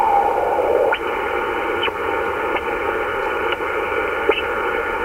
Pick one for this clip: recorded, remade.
remade